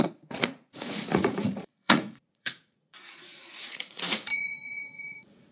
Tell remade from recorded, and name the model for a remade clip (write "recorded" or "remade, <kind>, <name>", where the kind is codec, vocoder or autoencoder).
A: remade, vocoder, Vocos